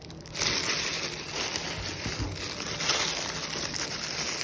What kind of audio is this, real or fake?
real